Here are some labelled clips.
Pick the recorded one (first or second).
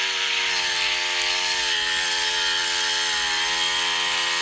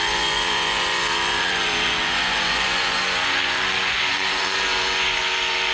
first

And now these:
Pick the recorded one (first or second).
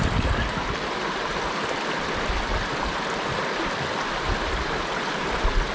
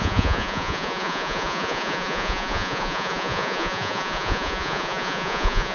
first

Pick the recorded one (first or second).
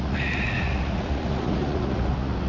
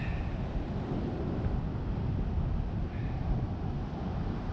second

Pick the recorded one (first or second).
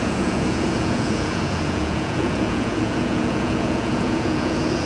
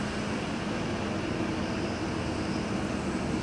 second